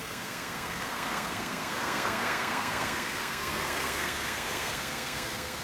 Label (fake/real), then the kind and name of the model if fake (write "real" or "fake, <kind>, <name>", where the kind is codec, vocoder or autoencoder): fake, codec, SNAC